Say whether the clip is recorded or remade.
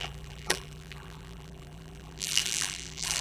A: remade